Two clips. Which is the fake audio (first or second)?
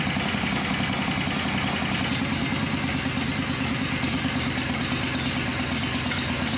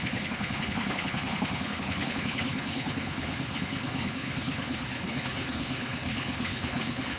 second